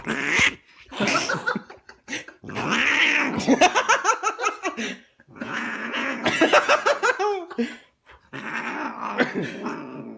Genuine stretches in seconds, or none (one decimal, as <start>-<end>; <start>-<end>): 0.0-5.3; 7.1-10.2